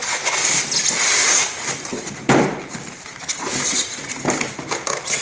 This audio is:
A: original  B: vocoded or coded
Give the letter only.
A